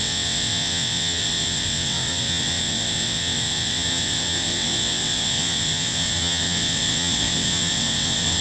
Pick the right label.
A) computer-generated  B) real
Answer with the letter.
A